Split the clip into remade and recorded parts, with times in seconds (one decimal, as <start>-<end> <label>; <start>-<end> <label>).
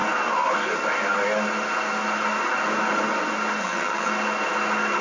0.0-3.6 recorded; 3.6-4.1 remade; 4.1-5.0 recorded